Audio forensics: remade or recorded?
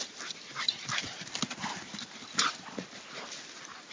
recorded